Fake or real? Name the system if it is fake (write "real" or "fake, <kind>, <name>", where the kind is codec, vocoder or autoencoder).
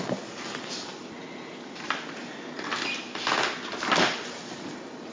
real